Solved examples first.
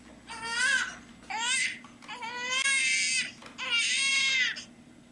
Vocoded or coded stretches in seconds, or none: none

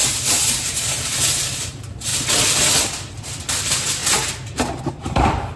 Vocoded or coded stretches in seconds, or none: 0.0-2.1 (vocoder, BigVGAN v2); 3.6-4.0; 4.9-5.6

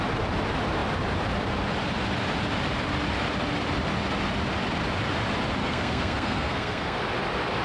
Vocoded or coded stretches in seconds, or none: 5.6-7.0 (codec, SNAC)

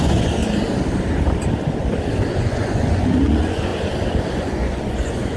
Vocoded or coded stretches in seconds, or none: 0.0-0.4 (vocoder, Vocos); 2.3-3.7; 4.3-5.4

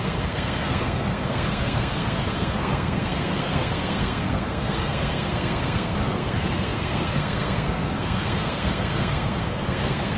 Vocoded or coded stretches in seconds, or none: 0.0-10.2 (codec, SNAC)